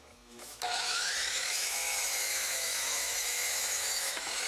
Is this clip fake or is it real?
fake